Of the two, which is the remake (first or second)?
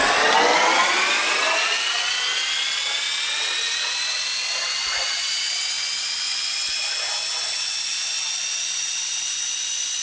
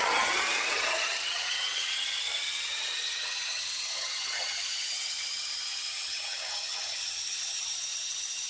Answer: second